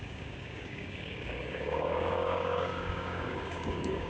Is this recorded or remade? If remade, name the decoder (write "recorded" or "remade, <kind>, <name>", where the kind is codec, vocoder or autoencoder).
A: remade, codec, DAC